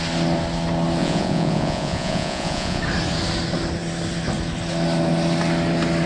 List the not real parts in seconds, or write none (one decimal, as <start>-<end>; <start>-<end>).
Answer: 1.0-2.8